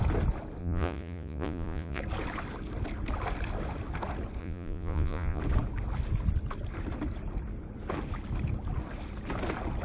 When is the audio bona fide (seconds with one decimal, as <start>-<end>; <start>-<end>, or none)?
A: 0.0-0.6; 2.0-4.4; 5.4-9.8